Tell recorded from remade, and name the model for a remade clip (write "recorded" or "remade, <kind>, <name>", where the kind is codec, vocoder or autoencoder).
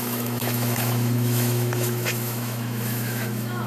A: remade, autoencoder, DAC-VAE